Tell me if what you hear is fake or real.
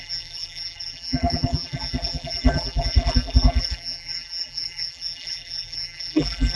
fake